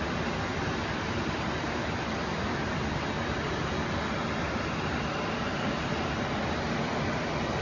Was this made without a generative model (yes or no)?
yes